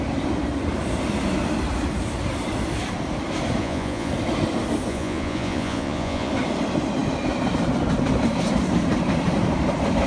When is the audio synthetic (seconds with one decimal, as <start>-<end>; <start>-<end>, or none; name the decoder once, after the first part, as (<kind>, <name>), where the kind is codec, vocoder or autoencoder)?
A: 3.6-4.1 (vocoder, Vocos); 4.9-6.3